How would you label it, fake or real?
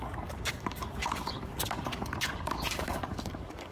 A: fake